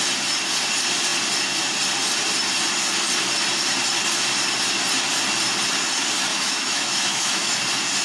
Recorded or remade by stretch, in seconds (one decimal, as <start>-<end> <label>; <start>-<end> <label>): 0.0-6.3 recorded; 6.3-7.6 remade; 7.6-8.0 recorded